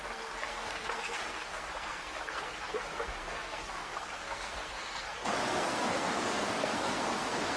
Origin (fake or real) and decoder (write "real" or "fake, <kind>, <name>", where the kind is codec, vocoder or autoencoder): fake, codec, SNAC